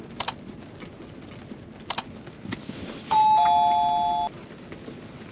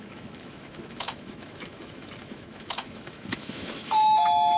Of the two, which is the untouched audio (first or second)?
first